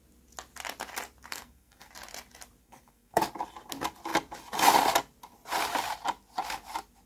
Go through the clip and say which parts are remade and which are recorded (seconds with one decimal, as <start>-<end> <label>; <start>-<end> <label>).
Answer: 0.0-1.3 recorded; 1.3-1.9 remade; 1.9-2.6 recorded; 2.6-3.2 remade; 3.2-7.1 recorded